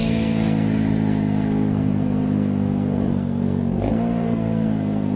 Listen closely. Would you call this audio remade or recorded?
remade